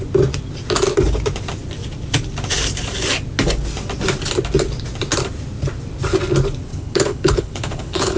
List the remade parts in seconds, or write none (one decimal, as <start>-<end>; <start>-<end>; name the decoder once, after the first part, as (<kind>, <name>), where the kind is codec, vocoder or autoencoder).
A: 6.7-8.2 (codec, HILCodec)